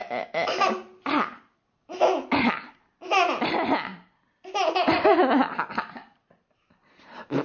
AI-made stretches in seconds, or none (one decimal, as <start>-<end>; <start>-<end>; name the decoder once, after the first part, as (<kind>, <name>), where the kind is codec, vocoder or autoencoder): none